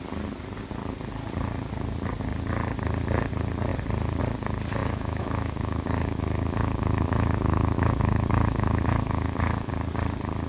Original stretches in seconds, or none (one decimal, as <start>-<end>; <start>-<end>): 0.0-4.8; 9.7-10.5